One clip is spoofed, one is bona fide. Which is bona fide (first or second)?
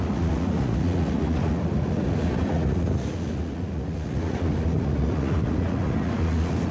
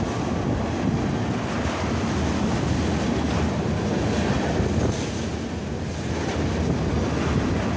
second